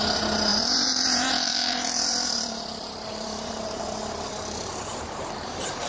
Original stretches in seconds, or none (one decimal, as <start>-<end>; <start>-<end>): 0.0-0.5; 3.8-4.9